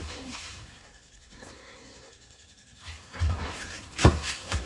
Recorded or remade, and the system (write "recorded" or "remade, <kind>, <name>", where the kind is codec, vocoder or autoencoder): remade, codec, SNAC